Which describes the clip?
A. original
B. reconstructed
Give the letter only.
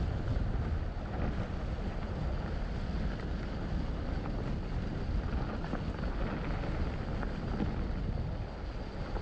A